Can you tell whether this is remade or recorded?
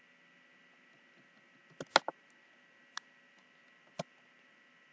recorded